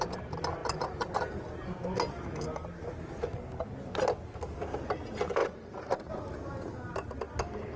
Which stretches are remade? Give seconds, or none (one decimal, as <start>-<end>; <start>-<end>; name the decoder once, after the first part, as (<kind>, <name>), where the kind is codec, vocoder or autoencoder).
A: 0.6-1.3 (vocoder, BigVGAN v2); 5.4-6.1